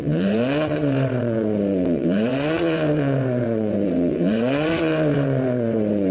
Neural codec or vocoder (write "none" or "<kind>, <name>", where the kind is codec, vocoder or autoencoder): vocoder, WaveNeXt